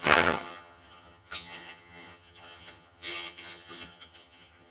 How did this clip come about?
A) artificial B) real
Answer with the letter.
A